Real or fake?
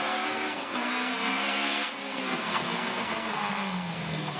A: fake